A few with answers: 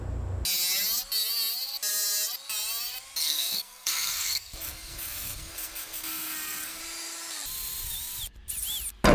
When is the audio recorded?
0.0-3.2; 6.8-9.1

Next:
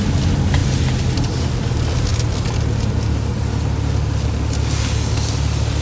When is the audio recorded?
0.0-5.8

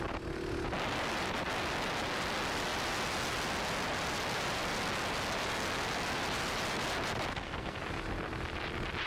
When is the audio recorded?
0.0-7.3; 7.8-9.1

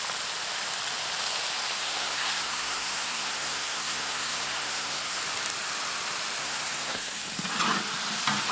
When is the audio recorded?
0.0-1.8; 5.2-6.4; 7.2-8.5

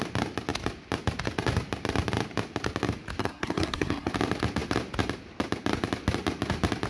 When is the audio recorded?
0.0-3.2; 4.1-6.9

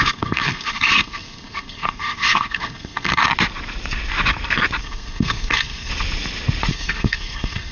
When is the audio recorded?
3.3-4.8; 5.9-6.7